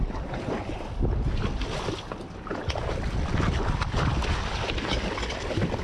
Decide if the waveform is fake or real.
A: real